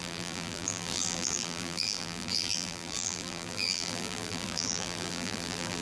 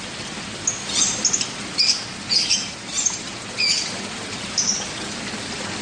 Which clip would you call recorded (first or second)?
second